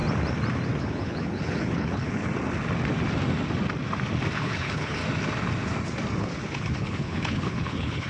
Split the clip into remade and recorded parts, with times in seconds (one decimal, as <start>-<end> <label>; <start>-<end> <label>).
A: 0.0-0.8 recorded; 0.8-2.2 remade; 2.2-4.4 recorded; 4.4-5.0 remade; 5.0-6.2 recorded; 6.2-8.1 remade